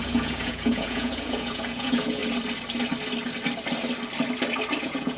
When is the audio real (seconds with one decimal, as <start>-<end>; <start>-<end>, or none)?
2.2-4.8